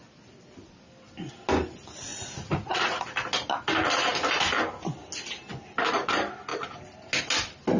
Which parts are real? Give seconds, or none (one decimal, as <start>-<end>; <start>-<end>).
0.0-2.1; 3.0-7.8